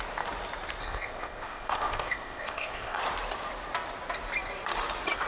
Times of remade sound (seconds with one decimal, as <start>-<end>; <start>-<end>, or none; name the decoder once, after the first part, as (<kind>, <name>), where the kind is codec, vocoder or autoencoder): 0.8-3.0 (codec, ZipCodec)